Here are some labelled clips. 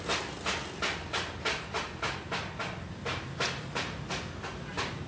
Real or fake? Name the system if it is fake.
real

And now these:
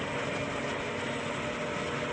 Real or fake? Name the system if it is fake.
real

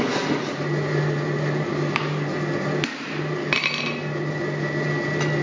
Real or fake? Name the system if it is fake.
real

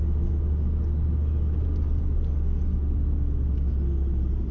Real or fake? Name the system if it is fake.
real